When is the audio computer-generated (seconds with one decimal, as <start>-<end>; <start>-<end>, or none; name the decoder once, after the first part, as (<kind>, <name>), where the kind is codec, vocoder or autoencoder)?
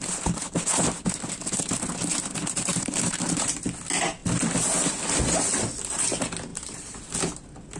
2.7-3.6 (vocoder, BigVGAN v2); 6.5-7.0